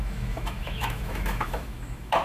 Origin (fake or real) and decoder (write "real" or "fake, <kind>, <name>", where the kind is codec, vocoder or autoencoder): fake, autoencoder, DAC-VAE